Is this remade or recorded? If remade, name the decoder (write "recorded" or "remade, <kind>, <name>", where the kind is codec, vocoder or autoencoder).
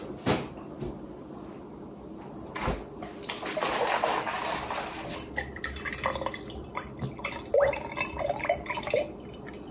recorded